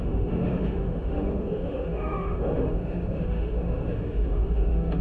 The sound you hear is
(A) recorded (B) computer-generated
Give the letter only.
B